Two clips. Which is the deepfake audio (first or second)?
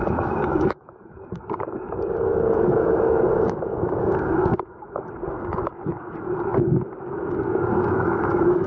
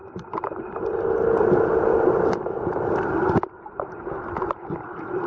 first